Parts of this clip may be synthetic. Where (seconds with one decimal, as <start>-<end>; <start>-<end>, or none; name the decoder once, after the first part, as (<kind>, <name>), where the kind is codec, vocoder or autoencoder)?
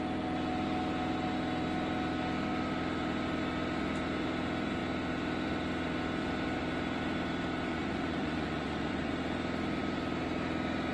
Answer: 7.7-9.2 (vocoder, Vocos)